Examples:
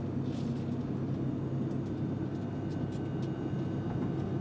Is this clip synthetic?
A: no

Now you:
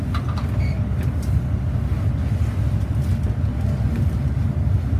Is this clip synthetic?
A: no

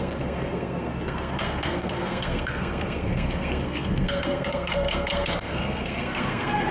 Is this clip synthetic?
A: yes